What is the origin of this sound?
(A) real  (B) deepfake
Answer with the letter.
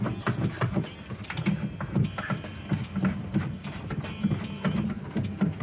A